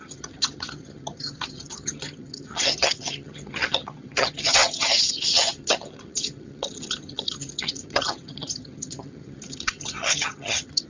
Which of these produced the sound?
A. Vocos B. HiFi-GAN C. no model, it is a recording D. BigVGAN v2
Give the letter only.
B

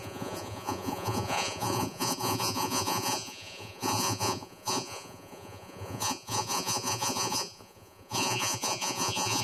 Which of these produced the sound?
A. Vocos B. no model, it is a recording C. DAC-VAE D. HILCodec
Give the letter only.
A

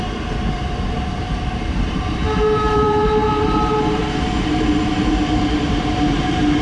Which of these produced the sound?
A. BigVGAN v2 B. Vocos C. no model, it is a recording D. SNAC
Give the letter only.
A